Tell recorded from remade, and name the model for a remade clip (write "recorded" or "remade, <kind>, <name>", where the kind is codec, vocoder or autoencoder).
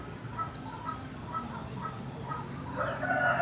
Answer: recorded